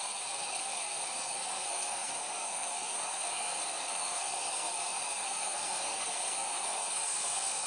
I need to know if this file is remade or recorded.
remade